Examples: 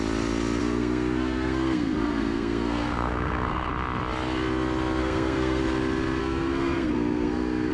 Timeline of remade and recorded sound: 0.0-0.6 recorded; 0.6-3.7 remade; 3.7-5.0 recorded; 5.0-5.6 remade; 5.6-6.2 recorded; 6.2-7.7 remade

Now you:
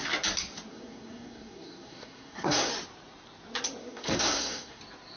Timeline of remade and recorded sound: 0.0-0.7 recorded; 0.7-2.7 remade; 2.7-3.8 recorded; 3.8-4.8 remade; 4.8-5.2 recorded

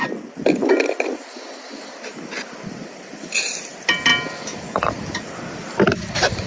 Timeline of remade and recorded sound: 0.0-6.5 recorded

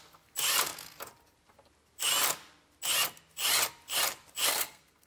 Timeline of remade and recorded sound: 0.0-4.5 recorded; 4.5-5.1 remade

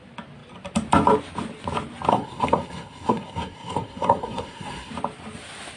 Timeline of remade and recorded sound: 0.0-2.1 recorded; 2.1-4.9 remade; 4.9-5.8 recorded